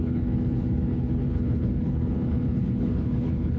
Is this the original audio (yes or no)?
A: no